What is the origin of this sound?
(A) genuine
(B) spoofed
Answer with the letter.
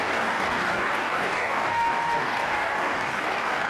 B